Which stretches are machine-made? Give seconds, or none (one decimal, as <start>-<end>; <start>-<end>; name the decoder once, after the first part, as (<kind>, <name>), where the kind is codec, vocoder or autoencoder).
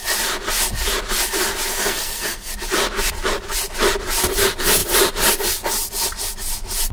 1.7-2.5 (codec, SNAC)